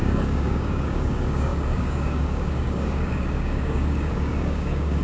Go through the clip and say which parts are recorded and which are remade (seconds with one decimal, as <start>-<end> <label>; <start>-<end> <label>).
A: 0.0-5.0 remade